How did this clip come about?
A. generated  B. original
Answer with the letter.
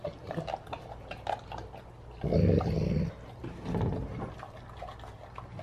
B